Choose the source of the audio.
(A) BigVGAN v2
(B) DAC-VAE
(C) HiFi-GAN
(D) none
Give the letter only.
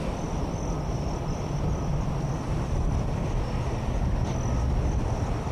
D